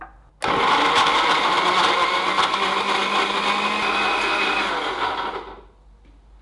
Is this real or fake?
real